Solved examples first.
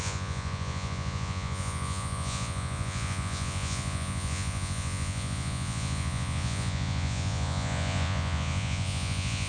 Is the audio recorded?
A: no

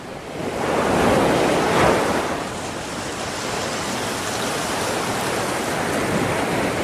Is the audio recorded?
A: yes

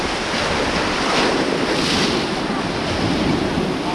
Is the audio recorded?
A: yes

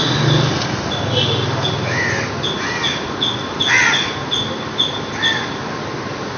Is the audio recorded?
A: yes